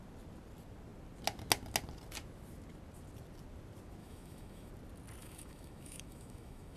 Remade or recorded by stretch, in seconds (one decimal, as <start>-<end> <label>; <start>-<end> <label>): 0.0-4.0 recorded; 4.0-4.7 remade; 4.7-5.2 recorded; 5.2-6.8 remade